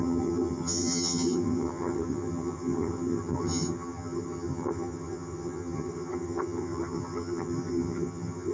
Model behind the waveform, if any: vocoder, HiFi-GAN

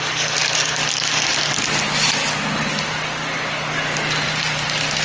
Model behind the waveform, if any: none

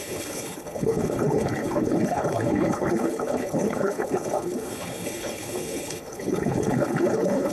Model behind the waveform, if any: codec, HILCodec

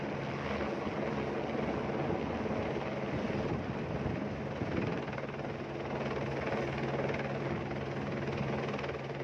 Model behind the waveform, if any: none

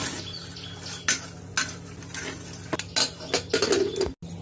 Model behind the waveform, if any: none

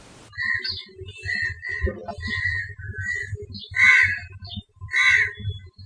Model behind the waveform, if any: none